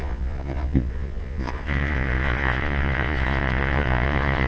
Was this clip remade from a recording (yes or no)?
yes